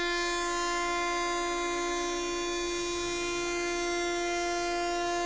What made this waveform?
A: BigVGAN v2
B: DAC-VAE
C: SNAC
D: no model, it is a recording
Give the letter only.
D